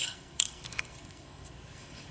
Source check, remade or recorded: remade